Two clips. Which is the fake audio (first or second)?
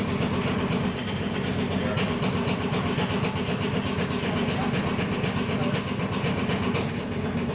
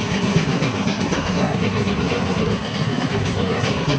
second